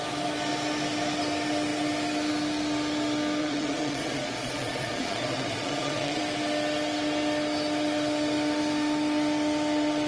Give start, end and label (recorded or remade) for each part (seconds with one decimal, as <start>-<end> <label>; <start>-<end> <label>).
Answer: 0.0-3.4 recorded; 3.4-6.2 remade; 6.2-10.1 recorded